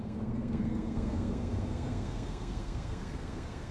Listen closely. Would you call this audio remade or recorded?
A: remade